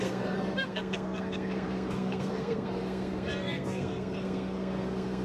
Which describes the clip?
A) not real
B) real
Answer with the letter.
A